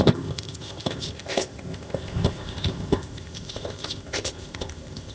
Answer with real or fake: fake